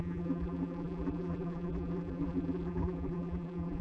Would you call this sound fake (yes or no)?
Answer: yes